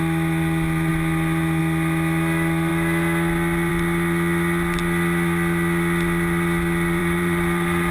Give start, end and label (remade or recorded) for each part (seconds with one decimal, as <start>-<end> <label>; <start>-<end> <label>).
0.0-7.0 recorded; 7.0-7.9 remade